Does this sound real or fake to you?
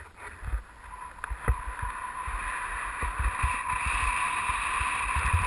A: real